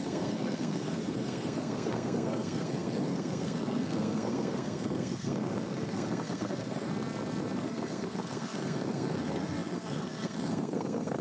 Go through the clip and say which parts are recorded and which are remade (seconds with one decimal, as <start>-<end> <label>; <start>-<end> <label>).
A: 0.0-6.9 remade; 6.9-7.6 recorded; 7.6-11.2 remade